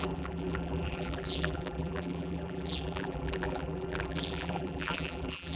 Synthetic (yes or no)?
yes